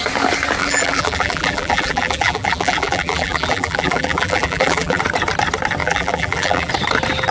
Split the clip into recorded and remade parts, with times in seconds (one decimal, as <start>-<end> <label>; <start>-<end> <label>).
0.0-0.6 recorded; 0.6-5.0 remade; 5.0-5.8 recorded; 5.8-6.7 remade; 6.7-7.3 recorded